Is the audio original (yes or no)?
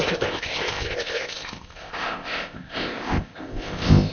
no